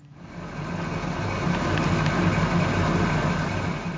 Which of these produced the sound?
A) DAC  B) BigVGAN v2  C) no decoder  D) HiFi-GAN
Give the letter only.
C